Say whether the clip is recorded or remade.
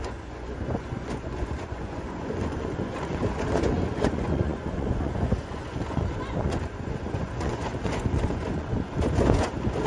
remade